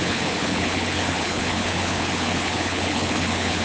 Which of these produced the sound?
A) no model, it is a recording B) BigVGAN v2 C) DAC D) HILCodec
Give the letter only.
D